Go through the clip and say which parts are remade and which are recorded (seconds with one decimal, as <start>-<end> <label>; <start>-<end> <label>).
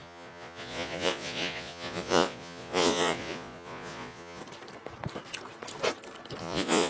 0.0-4.4 remade; 4.4-6.4 recorded; 6.4-6.9 remade